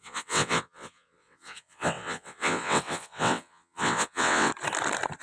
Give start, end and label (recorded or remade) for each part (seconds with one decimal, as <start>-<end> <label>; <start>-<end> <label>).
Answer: 0.0-4.5 remade; 4.5-5.2 recorded